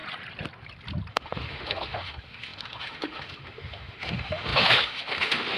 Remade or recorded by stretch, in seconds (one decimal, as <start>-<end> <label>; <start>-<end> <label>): 0.0-1.1 recorded; 1.1-5.6 remade